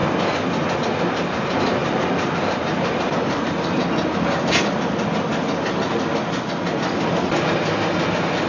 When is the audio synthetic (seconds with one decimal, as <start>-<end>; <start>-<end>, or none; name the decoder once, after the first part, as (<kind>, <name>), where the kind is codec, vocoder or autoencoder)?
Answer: 0.8-3.8 (vocoder, BigVGAN v2)